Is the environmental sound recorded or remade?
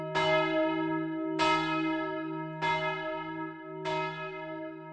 recorded